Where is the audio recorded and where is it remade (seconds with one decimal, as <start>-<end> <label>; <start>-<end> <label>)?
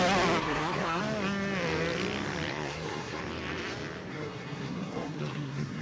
0.0-0.4 recorded; 0.4-1.0 remade; 1.0-2.5 recorded; 2.5-3.2 remade; 3.2-4.1 recorded; 4.1-5.8 remade